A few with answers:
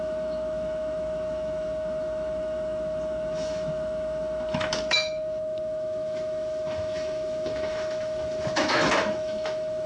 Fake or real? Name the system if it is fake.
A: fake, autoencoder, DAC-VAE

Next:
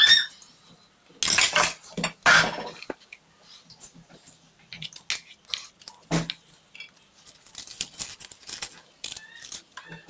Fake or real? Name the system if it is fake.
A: real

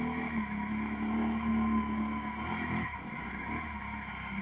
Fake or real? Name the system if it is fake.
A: fake, autoencoder, DAC-VAE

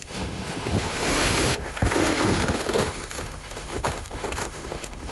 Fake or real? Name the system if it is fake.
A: fake, autoencoder, DAC-VAE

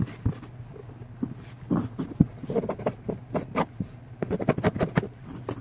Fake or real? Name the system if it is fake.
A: real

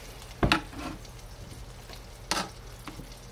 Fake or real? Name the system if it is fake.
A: real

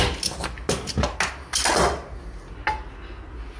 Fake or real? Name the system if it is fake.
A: real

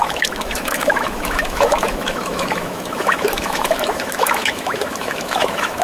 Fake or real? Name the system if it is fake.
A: fake, autoencoder, DAC-VAE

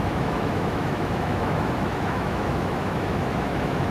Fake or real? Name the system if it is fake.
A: fake, autoencoder, DAC-VAE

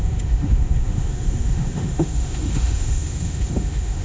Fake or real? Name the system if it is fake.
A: fake, autoencoder, DAC-VAE